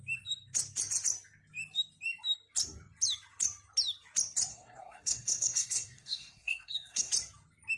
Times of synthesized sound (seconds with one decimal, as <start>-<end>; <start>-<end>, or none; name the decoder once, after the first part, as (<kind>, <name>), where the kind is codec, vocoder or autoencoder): 4.5-7.1 (codec, SNAC)